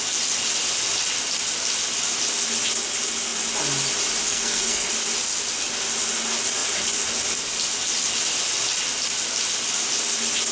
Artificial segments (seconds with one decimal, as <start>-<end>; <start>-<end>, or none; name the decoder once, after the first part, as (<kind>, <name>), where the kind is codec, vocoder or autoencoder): 4.3-4.9 (codec, SNAC)

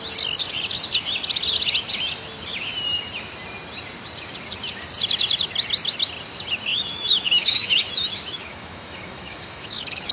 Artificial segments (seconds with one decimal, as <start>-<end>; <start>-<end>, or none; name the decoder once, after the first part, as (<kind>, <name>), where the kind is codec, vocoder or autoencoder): 6.7-10.1 (autoencoder, DAC-VAE)

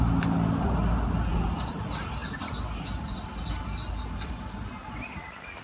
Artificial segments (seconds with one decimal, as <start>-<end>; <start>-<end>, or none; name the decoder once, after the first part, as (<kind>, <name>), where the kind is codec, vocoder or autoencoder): none

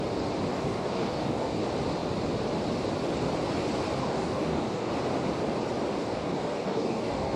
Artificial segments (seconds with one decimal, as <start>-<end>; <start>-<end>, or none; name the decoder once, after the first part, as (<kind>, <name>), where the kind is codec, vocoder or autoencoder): 0.5-1.6 (codec, DAC); 4.0-4.9; 6.0-7.4

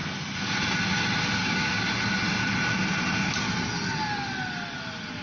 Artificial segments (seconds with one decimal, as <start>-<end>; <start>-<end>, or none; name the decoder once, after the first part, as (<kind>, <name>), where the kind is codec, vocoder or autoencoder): 1.4-1.9 (codec, DAC)